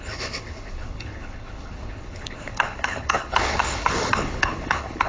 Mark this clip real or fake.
fake